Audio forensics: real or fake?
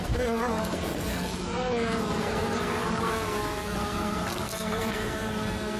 fake